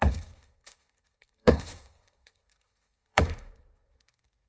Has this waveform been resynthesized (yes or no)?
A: yes